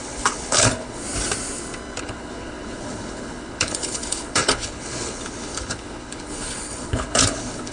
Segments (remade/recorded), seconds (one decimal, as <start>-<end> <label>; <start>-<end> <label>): 0.0-1.0 remade; 1.0-2.0 recorded; 2.0-7.7 remade